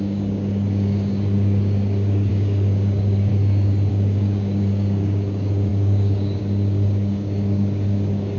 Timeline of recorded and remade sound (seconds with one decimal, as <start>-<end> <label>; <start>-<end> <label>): 0.0-3.3 remade; 3.3-3.9 recorded; 3.9-8.4 remade